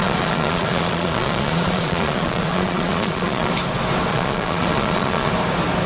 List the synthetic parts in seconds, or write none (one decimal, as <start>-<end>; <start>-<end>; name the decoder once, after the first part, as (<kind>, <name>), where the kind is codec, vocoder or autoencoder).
0.0-3.5 (vocoder, Vocos); 4.1-5.3